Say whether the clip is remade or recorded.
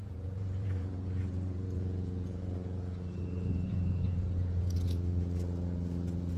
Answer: remade